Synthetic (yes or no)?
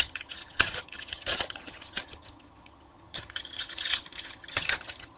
yes